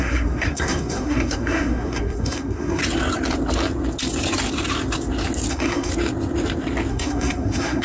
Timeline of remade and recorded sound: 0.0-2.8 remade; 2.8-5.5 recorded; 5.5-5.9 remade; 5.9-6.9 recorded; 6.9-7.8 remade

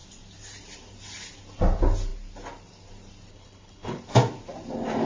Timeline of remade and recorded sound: 0.0-3.3 recorded; 3.3-4.0 remade; 4.0-5.1 recorded

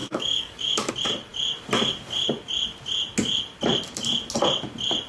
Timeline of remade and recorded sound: 0.0-0.9 remade; 0.9-5.1 recorded

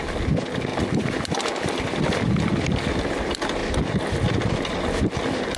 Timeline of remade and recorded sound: 0.0-5.6 recorded

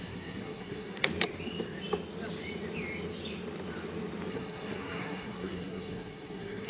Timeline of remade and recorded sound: 0.0-1.1 remade; 1.1-4.3 recorded; 4.3-6.7 remade

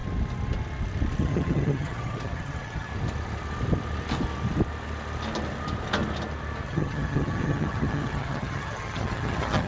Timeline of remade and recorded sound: 0.0-1.2 recorded; 1.2-2.9 remade; 2.9-6.6 recorded; 6.6-9.7 remade

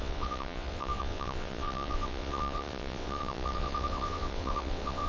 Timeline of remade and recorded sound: 0.0-5.1 remade

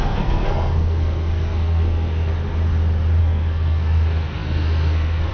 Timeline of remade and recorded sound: 0.0-2.3 remade; 2.3-3.2 recorded; 3.2-5.3 remade